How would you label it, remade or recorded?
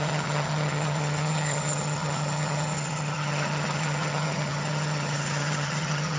remade